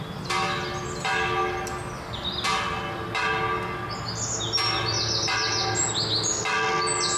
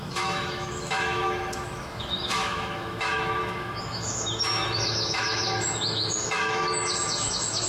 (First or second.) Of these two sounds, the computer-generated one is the second